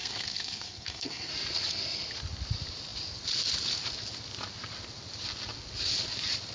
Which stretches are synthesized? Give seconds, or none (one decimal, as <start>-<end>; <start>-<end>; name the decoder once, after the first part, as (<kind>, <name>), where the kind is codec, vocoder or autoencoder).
0.0-1.3 (codec, SNAC)